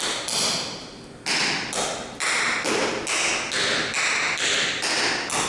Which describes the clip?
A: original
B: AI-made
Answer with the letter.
A